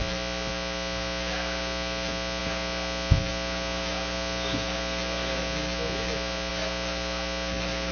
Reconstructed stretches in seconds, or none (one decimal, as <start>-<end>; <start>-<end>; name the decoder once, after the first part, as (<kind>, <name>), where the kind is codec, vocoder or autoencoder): none